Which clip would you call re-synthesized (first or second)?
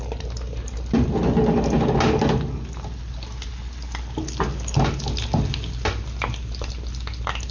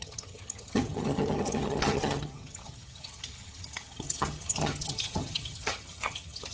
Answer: second